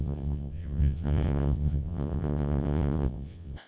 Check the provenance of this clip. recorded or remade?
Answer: remade